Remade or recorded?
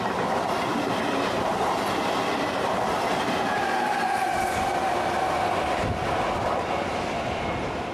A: recorded